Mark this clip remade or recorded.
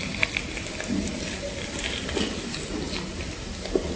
recorded